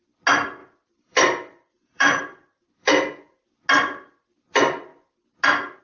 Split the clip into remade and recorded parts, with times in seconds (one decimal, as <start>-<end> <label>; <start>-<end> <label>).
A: 0.0-0.6 recorded; 0.6-3.5 remade; 3.5-5.8 recorded